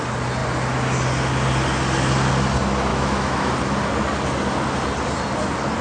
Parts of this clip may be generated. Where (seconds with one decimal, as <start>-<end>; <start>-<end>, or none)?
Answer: 2.9-3.5